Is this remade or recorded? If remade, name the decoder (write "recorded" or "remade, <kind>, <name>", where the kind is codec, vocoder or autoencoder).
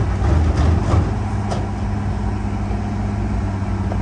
recorded